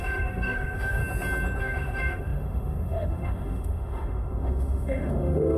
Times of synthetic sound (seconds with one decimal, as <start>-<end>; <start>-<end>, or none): 0.0-1.0; 1.6-5.6